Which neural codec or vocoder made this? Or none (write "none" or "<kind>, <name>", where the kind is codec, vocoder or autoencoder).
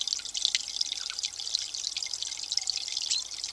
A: none